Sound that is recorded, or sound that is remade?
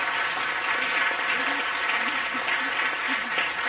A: recorded